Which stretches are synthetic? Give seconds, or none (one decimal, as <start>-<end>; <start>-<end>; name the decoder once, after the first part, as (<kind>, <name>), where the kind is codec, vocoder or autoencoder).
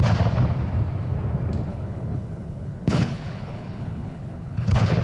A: 1.7-5.0 (codec, HILCodec)